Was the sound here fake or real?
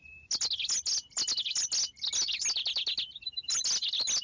real